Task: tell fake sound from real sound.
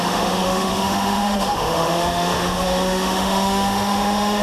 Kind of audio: fake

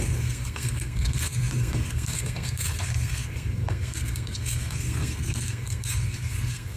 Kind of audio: fake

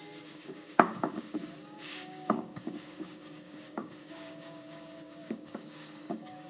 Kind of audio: fake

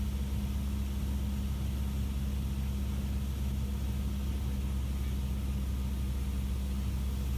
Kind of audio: real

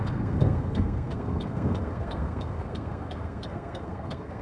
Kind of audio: fake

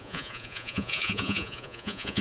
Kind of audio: fake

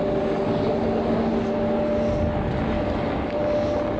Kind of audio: real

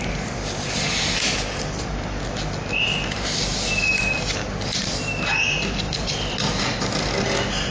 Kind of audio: real